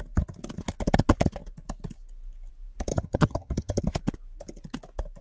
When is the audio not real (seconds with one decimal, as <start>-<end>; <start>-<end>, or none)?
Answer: 2.9-3.8